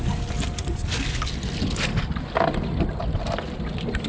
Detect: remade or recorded recorded